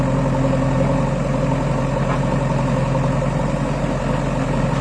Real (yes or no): yes